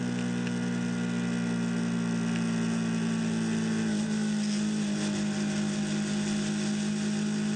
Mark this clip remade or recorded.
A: recorded